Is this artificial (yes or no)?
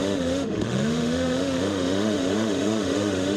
yes